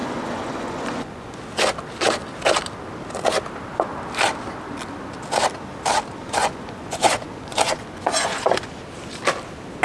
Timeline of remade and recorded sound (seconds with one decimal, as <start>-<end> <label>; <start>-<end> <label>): 0.0-1.3 remade; 1.3-6.2 recorded; 6.2-8.7 remade; 8.7-9.8 recorded